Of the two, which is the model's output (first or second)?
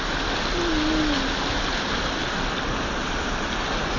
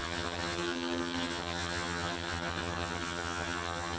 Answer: second